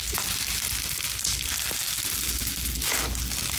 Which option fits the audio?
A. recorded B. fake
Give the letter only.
A